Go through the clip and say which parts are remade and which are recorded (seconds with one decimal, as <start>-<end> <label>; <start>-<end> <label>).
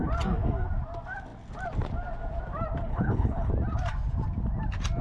0.0-2.9 recorded; 2.9-3.5 remade; 3.5-5.0 recorded